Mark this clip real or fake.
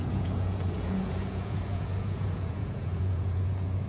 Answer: fake